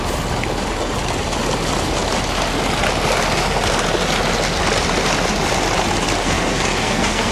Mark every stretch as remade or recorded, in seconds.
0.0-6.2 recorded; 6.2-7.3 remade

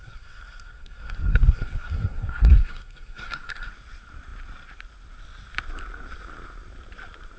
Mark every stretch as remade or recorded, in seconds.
0.0-3.7 remade; 3.7-7.4 recorded